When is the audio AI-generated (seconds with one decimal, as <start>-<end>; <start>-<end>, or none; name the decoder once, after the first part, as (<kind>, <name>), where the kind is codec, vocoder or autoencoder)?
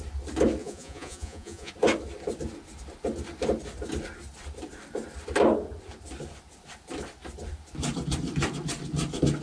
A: 0.6-1.7 (vocoder, Vocos)